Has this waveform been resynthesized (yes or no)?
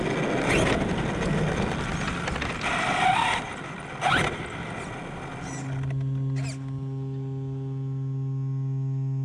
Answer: no